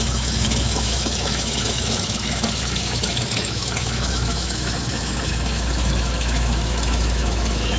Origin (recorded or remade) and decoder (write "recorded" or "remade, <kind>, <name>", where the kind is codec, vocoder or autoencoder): remade, autoencoder, DAC-VAE